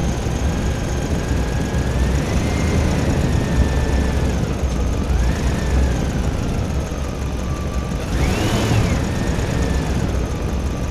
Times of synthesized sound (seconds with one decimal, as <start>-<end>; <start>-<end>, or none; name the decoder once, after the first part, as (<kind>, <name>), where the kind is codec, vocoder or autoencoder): none